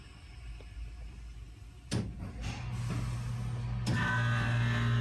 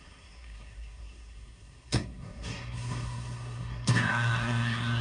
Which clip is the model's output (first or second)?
second